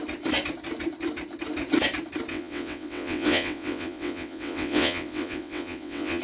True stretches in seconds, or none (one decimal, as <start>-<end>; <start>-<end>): 0.0-2.3